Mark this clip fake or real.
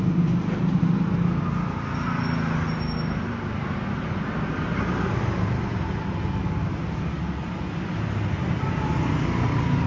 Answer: real